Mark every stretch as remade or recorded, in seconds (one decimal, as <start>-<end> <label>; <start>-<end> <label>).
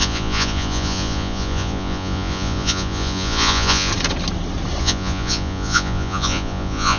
0.0-3.9 remade; 3.9-4.8 recorded; 4.8-7.0 remade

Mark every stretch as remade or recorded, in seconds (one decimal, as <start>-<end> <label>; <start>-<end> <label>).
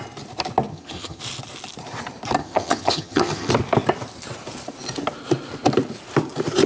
0.0-0.7 recorded; 0.7-1.2 remade; 1.2-2.4 recorded; 2.4-3.5 remade; 3.5-6.7 recorded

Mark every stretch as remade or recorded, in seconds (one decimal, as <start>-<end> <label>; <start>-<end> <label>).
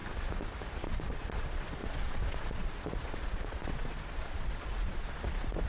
0.0-0.7 recorded; 0.7-5.7 remade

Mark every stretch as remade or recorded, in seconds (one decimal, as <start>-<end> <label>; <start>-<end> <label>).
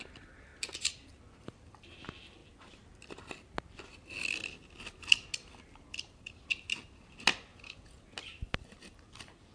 0.0-7.5 recorded; 7.5-8.0 remade; 8.0-9.5 recorded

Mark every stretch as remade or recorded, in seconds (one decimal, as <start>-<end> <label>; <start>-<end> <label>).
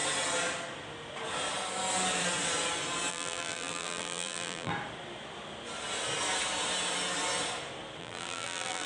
0.0-3.1 recorded; 3.1-4.7 remade; 4.7-8.0 recorded; 8.0-8.9 remade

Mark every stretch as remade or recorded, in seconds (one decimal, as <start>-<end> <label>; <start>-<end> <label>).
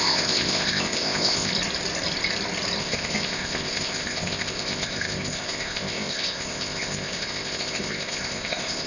0.0-1.5 remade; 1.5-2.8 recorded; 2.8-8.9 remade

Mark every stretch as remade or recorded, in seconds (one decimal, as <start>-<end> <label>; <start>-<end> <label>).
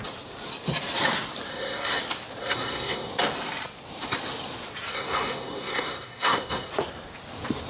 0.0-1.5 recorded; 1.5-2.0 remade; 2.0-2.4 recorded; 2.4-3.1 remade; 3.1-4.9 recorded; 4.9-6.7 remade; 6.7-7.7 recorded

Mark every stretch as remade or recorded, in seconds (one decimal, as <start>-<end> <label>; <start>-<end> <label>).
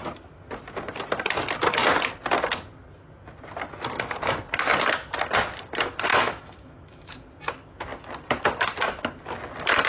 0.0-6.1 recorded; 6.1-7.1 remade; 7.1-9.9 recorded